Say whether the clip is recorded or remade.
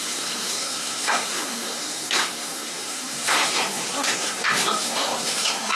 remade